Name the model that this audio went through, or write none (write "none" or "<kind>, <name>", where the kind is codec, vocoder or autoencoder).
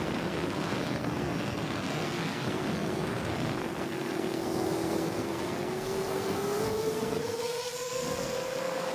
codec, SNAC